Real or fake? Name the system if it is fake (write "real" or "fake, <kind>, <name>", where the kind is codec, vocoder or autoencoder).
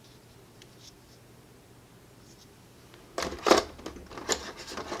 real